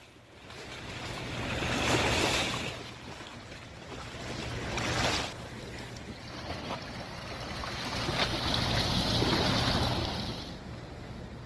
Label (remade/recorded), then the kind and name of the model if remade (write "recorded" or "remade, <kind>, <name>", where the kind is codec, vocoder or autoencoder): recorded